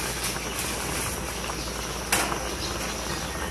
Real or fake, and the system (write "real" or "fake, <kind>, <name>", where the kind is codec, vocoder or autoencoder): real